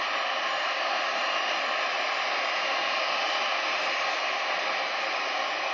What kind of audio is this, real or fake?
real